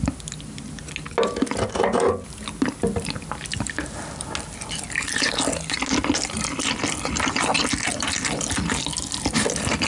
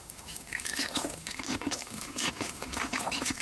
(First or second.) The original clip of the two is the first